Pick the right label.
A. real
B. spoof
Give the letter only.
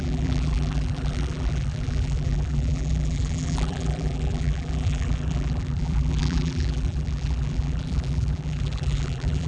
B